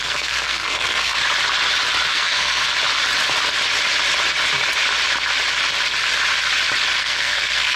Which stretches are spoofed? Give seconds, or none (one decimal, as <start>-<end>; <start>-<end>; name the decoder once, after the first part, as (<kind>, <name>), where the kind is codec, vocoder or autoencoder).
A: 0.0-1.2 (codec, SNAC); 2.1-2.7; 7.0-7.8